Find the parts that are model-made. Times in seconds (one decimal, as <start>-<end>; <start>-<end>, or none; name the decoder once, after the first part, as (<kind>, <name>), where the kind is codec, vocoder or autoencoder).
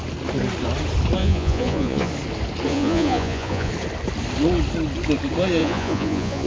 1.2-2.1 (vocoder, Vocos); 2.7-3.7; 5.6-6.5